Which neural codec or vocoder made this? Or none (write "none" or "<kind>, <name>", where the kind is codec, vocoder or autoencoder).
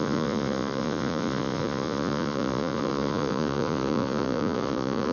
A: vocoder, Vocos